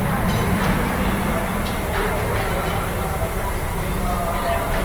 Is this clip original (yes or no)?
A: no